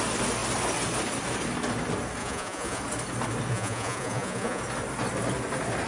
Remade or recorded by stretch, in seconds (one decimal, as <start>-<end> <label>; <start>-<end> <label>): 0.0-2.2 recorded; 2.2-2.8 remade; 2.8-3.5 recorded; 3.5-4.6 remade; 4.6-5.9 recorded